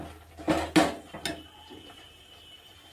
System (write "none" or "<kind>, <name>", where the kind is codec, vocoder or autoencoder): none